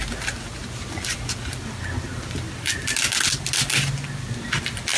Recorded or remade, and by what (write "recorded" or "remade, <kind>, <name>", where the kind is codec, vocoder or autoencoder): recorded